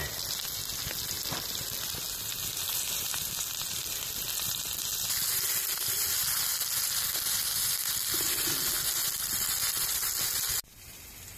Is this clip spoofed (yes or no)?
no